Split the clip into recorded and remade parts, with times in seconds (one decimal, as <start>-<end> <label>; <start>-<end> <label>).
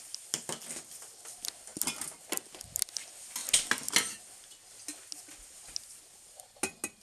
0.0-7.0 recorded